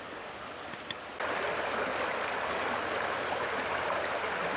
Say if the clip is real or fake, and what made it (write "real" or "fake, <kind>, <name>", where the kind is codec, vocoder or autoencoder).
real